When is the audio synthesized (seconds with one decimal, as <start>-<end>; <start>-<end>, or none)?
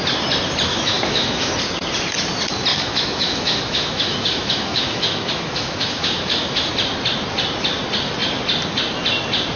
0.7-1.5; 2.7-6.7